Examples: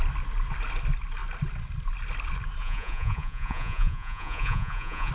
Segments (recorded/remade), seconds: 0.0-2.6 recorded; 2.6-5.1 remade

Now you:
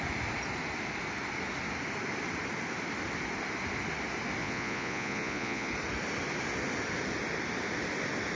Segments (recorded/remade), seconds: 0.0-4.4 recorded; 4.4-5.7 remade; 5.7-8.4 recorded